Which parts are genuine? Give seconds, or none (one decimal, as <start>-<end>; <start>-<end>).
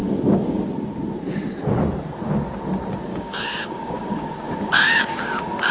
0.6-3.1